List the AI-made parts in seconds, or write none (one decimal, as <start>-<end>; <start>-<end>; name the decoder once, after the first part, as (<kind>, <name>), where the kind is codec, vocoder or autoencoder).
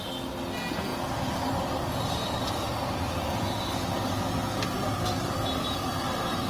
none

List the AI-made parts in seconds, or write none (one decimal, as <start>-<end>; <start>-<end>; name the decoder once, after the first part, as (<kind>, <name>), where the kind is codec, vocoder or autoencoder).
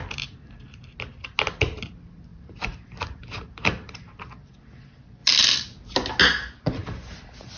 2.3-4.1 (vocoder, BigVGAN v2)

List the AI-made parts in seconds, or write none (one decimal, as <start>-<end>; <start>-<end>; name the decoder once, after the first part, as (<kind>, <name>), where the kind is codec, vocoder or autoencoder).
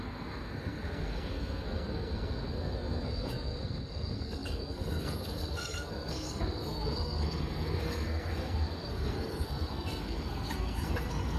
0.0-11.4 (codec, SNAC)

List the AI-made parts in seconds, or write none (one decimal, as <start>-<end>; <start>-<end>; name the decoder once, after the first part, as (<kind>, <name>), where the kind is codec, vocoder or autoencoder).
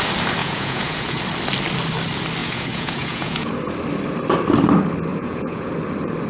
0.4-1.2 (vocoder, Vocos); 2.4-3.5; 5.1-5.7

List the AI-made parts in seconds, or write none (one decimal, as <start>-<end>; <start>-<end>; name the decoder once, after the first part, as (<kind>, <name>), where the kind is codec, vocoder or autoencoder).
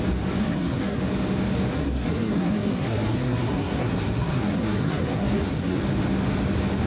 0.4-1.0 (codec, SNAC); 1.7-5.8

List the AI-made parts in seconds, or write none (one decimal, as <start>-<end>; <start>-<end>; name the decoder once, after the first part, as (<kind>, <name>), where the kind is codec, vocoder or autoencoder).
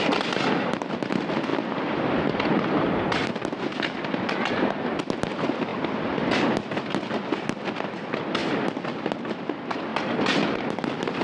1.5-5.1 (vocoder, BigVGAN v2); 5.7-6.4; 9.9-11.2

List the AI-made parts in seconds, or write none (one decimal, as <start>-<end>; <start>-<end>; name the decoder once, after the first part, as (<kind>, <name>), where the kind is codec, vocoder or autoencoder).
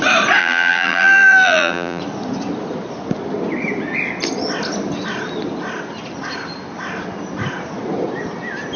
0.4-2.0 (vocoder, BigVGAN v2)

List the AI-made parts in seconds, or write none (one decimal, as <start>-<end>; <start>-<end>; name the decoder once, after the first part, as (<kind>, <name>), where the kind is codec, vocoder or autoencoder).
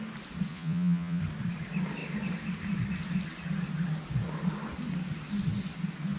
0.5-1.2 (vocoder, Vocos)